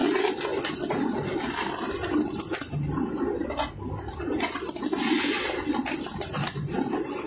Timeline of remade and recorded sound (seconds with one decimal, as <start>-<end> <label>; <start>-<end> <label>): 0.0-7.3 recorded